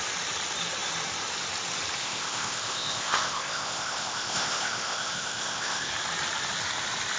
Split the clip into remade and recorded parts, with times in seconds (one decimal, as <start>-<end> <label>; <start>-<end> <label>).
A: 0.0-2.0 recorded; 2.0-5.9 remade; 5.9-7.2 recorded